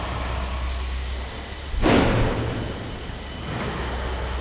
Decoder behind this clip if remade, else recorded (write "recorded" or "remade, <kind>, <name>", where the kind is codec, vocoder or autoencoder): recorded